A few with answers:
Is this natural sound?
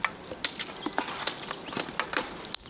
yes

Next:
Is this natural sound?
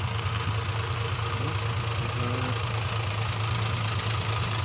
yes